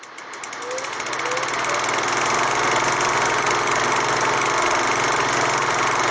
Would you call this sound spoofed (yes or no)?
no